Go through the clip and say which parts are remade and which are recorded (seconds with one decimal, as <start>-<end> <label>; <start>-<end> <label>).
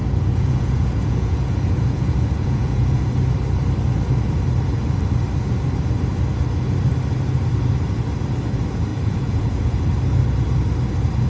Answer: 0.0-3.1 remade; 3.1-8.9 recorded; 8.9-9.8 remade; 9.8-11.3 recorded